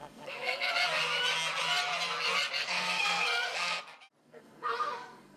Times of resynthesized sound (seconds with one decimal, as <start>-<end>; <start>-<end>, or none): 0.0-0.7; 2.6-3.8; 4.2-5.4